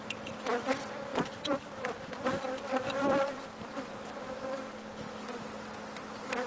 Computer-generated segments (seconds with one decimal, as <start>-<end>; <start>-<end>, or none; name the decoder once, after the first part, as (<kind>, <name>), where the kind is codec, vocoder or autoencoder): 1.1-4.7 (vocoder, BigVGAN v2)